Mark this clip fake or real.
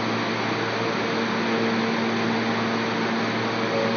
real